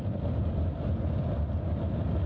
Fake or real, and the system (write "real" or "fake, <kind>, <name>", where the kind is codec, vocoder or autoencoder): real